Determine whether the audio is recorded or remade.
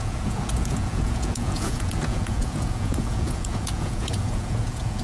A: remade